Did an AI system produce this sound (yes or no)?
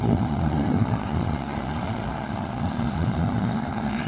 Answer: yes